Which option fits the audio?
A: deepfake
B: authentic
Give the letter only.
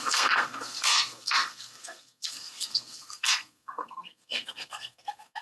A